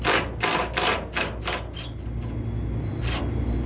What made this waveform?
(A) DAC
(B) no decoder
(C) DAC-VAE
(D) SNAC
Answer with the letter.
B